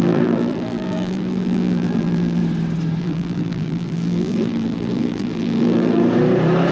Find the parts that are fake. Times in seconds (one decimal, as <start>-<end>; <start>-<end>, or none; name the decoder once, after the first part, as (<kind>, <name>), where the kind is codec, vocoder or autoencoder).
0.0-2.4 (vocoder, BigVGAN v2); 3.0-6.0